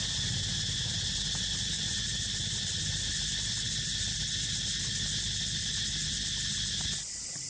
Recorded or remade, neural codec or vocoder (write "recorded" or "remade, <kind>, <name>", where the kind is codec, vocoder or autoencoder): recorded